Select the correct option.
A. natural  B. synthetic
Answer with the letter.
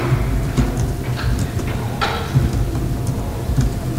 A